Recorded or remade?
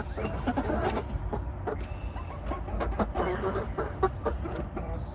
recorded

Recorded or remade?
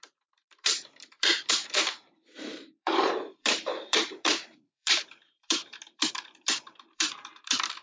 remade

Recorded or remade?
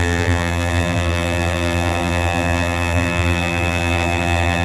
remade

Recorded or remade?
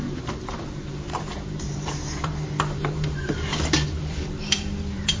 remade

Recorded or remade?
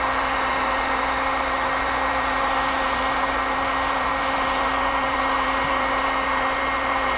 remade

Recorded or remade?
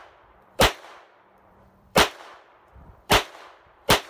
remade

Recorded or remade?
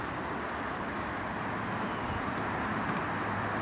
recorded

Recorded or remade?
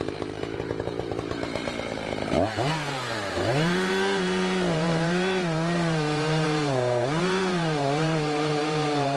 remade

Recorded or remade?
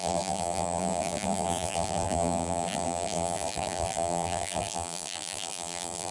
remade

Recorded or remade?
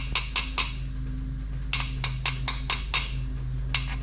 recorded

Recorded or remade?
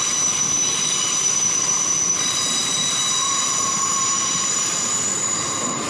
remade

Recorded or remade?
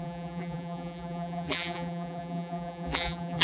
remade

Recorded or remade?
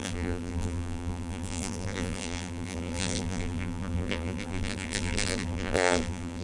remade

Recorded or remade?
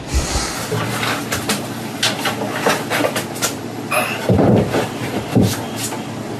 recorded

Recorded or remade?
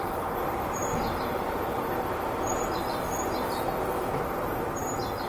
remade